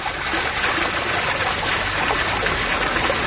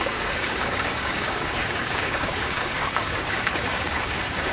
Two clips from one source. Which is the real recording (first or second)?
first